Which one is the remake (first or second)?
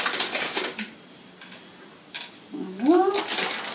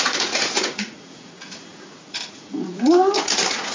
second